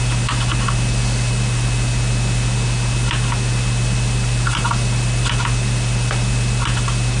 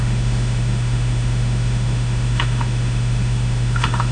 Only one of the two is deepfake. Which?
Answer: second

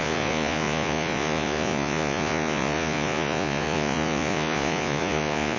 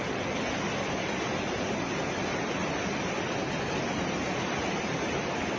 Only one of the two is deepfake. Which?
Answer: first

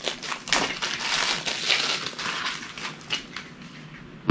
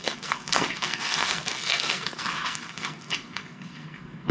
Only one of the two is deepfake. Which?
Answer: second